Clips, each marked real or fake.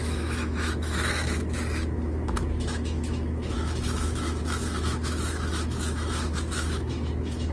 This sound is fake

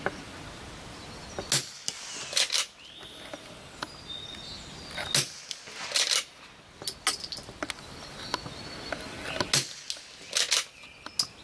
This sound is real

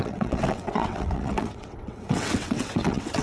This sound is fake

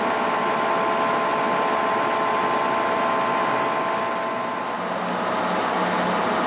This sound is real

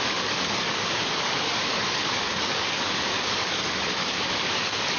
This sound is fake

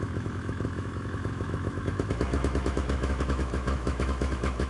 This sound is fake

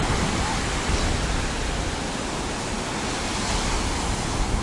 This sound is real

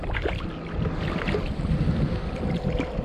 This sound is real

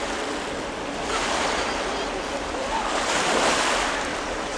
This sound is real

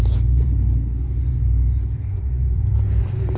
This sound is fake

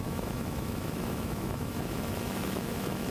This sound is fake